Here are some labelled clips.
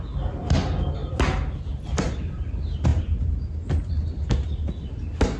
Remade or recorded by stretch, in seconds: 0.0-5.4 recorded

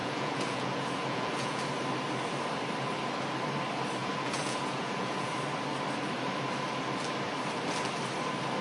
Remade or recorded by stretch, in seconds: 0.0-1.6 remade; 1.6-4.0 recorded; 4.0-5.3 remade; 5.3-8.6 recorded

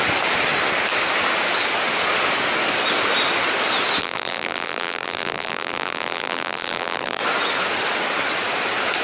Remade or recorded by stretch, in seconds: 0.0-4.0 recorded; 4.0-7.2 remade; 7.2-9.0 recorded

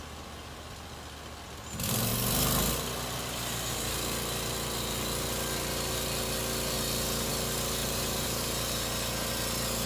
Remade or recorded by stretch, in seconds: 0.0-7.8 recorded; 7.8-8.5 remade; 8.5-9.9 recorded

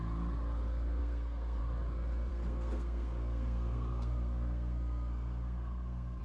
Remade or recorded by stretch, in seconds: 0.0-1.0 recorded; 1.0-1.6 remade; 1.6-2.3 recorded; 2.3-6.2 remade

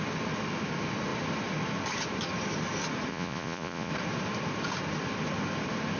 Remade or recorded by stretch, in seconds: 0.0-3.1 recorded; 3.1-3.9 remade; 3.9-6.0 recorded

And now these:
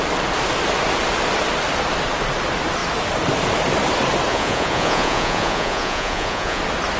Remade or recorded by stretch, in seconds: 0.0-4.3 recorded; 4.3-6.6 remade; 6.6-7.0 recorded

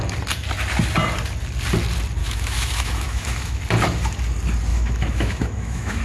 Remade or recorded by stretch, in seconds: 0.0-2.2 recorded; 2.2-3.6 remade; 3.6-4.7 recorded; 4.7-6.0 remade